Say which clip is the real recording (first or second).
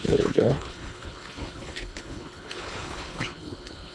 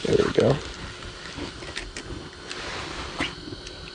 second